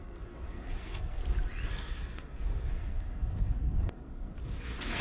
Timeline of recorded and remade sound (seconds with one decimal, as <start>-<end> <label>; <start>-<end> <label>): 0.0-1.2 remade; 1.2-1.7 recorded; 1.7-5.0 remade